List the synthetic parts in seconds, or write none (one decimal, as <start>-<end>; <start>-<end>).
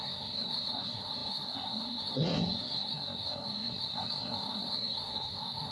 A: 0.0-5.7